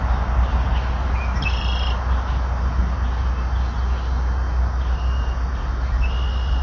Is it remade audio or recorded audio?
recorded